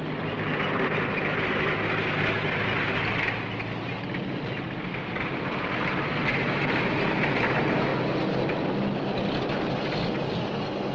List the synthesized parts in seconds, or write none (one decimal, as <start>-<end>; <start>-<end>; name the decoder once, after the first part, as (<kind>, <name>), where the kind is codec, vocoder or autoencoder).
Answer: none